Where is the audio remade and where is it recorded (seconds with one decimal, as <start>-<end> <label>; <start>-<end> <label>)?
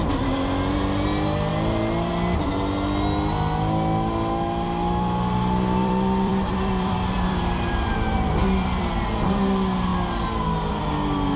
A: 0.0-5.8 recorded; 5.8-9.1 remade; 9.1-11.4 recorded